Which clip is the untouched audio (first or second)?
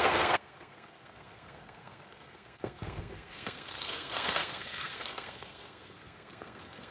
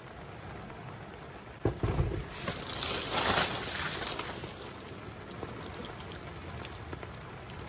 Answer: second